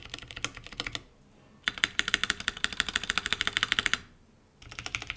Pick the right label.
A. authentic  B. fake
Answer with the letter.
A